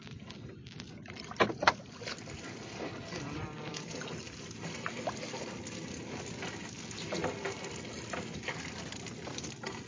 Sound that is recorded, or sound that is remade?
recorded